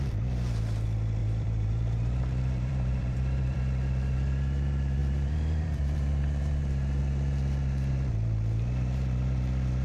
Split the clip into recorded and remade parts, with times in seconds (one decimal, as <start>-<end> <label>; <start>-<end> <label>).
0.0-1.2 recorded; 1.2-3.6 remade; 3.6-5.0 recorded; 5.0-7.0 remade; 7.0-9.8 recorded